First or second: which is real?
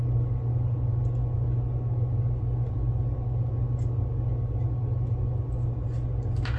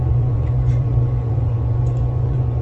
first